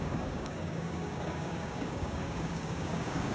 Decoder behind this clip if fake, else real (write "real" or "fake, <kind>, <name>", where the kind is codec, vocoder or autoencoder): fake, codec, DAC